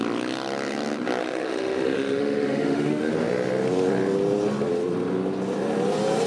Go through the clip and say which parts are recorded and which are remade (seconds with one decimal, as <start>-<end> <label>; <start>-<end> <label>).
0.0-1.2 recorded; 1.2-3.1 remade; 3.1-6.3 recorded